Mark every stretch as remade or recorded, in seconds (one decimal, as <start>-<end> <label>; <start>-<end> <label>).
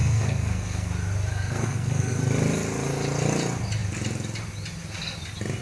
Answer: 0.0-0.9 remade; 0.9-1.3 recorded; 1.3-2.2 remade; 2.2-5.6 recorded